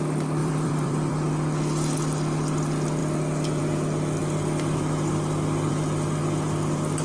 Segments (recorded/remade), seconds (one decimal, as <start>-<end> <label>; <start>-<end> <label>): 0.0-0.4 recorded; 0.4-1.1 remade; 1.1-7.0 recorded